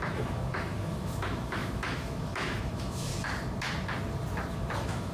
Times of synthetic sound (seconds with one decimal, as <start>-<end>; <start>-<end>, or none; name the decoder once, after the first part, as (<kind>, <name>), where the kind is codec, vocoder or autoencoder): 0.0-3.1 (autoencoder, DAC-VAE); 4.5-5.1